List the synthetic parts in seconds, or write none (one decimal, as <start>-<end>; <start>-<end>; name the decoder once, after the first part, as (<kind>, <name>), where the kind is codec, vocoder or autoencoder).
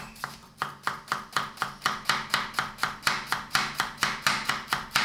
0.0-5.0 (vocoder, BigVGAN v2)